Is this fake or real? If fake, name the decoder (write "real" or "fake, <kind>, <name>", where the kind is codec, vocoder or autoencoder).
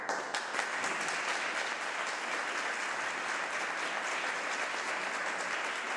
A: real